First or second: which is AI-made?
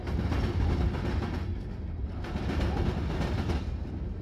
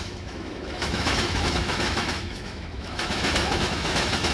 second